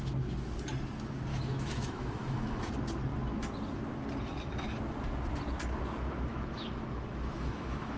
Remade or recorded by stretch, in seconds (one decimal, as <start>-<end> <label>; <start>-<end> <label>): 0.0-1.3 recorded; 1.3-2.6 remade; 2.6-6.3 recorded; 6.3-8.0 remade